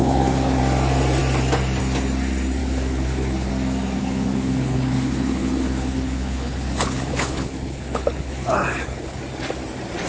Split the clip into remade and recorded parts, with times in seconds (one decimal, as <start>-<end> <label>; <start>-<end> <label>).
0.0-0.6 remade; 0.6-2.6 recorded; 2.6-3.5 remade; 3.5-4.0 recorded; 4.0-9.2 remade; 9.2-10.1 recorded